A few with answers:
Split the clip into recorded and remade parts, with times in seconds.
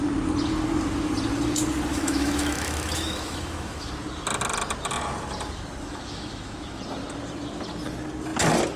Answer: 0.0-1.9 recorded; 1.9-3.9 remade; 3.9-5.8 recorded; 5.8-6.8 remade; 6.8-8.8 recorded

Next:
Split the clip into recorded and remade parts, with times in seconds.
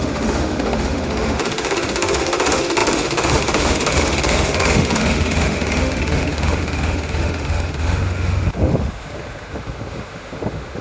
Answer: 0.0-10.8 remade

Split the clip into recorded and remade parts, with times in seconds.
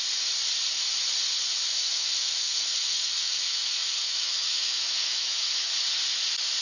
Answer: 0.0-1.7 recorded; 1.7-5.7 remade; 5.7-6.6 recorded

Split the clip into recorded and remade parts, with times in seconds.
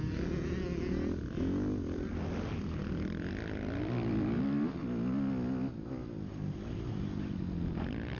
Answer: 0.0-8.2 recorded